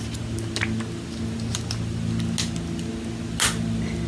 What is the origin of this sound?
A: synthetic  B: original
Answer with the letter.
B